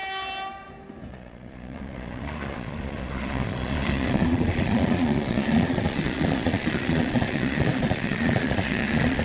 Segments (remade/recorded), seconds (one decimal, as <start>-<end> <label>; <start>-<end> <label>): 0.0-1.1 recorded; 1.1-9.2 remade